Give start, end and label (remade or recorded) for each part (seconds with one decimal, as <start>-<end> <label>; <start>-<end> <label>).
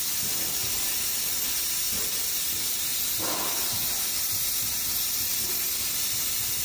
0.0-6.6 recorded